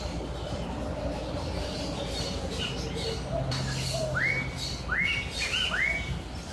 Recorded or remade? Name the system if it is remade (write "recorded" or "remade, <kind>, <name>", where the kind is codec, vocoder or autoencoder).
recorded